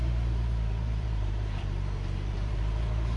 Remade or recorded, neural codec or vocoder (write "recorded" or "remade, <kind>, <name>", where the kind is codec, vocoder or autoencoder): remade, vocoder, BigVGAN v2